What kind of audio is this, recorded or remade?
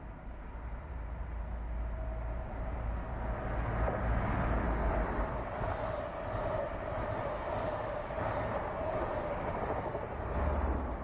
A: recorded